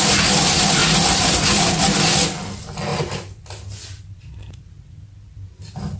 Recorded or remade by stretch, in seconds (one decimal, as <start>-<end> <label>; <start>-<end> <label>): 0.0-6.0 recorded